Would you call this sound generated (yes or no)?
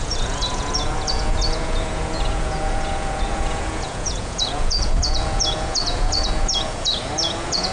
yes